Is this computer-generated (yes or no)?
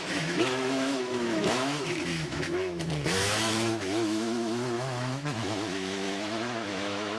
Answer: yes